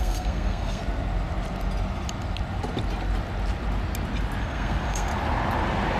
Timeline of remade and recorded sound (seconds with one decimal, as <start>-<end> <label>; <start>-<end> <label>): 0.0-0.8 remade; 0.8-4.4 recorded; 4.4-5.1 remade; 5.1-6.0 recorded